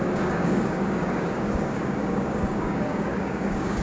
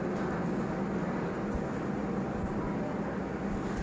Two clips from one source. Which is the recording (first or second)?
second